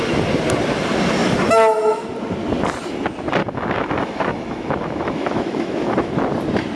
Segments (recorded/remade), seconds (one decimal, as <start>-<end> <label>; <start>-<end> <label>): 0.0-3.4 recorded; 3.4-6.1 remade; 6.1-6.8 recorded